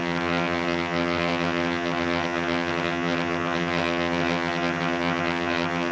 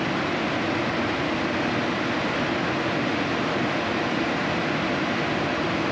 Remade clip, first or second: first